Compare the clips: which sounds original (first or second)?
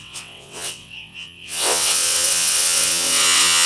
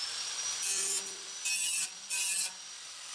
second